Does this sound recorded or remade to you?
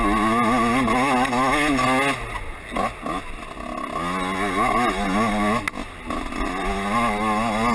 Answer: recorded